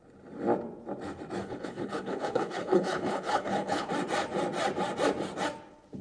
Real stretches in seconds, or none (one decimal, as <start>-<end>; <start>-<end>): 0.0-1.4; 3.9-6.0